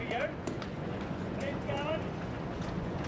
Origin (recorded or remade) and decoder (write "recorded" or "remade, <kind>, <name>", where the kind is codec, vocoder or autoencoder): remade, vocoder, Vocos